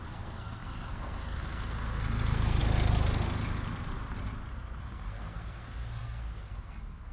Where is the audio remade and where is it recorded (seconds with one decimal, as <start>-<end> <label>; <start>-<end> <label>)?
0.0-2.6 remade; 2.6-4.5 recorded; 4.5-7.1 remade